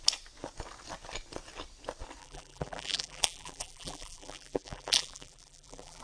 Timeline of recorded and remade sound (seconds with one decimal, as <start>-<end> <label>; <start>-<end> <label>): 0.0-2.2 recorded; 2.2-6.0 remade